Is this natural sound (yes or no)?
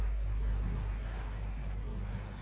no